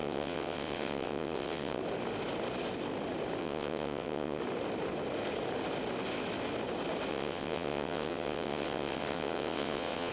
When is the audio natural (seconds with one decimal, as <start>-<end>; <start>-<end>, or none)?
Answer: 1.8-3.4; 4.4-7.1